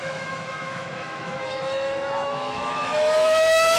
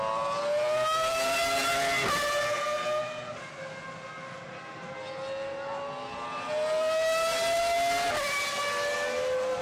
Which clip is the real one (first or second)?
second